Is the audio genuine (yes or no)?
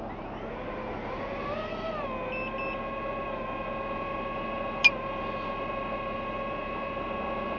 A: yes